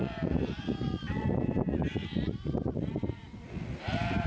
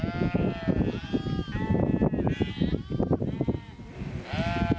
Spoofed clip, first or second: first